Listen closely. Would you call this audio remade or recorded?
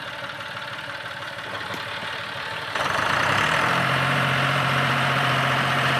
remade